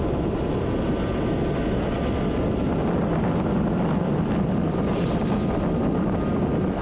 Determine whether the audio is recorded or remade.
recorded